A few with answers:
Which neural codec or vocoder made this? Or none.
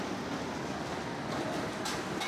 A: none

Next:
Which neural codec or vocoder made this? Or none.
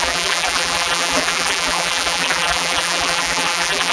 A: vocoder, BigVGAN v2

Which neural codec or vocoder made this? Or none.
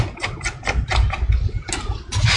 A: none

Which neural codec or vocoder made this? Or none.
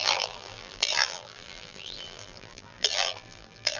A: vocoder, BigVGAN v2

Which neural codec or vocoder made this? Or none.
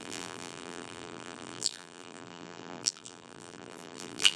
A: vocoder, BigVGAN v2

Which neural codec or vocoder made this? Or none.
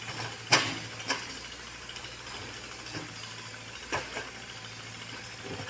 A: none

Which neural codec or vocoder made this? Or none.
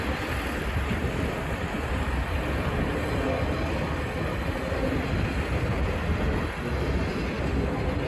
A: none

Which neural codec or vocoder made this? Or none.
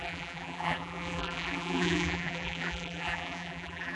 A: vocoder, BigVGAN v2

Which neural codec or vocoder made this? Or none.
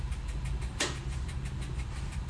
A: none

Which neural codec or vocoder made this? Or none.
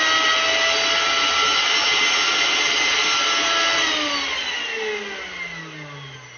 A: none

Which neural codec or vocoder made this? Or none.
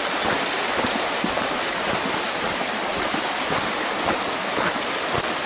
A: none